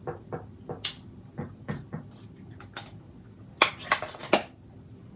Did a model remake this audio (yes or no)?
no